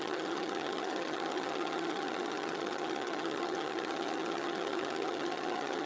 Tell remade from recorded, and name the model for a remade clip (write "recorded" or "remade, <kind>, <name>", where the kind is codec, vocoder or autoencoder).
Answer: remade, vocoder, HiFi-GAN